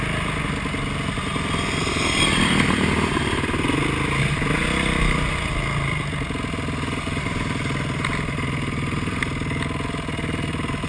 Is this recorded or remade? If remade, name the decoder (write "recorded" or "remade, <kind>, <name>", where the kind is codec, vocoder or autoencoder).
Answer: recorded